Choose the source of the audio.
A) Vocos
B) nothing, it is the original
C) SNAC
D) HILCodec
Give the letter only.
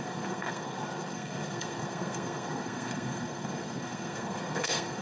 C